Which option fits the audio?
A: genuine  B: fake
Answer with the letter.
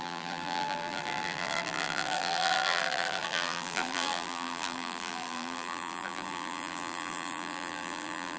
B